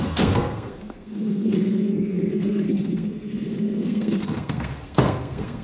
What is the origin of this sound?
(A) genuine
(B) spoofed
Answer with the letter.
B